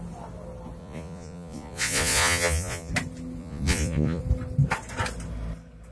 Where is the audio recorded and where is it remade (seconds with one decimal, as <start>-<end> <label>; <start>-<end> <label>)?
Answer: 0.0-0.8 recorded; 0.8-2.9 remade; 2.9-3.4 recorded; 3.4-4.2 remade; 4.2-5.9 recorded